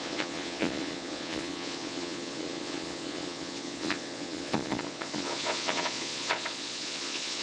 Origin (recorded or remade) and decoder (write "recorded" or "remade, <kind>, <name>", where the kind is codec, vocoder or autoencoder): remade, vocoder, Vocos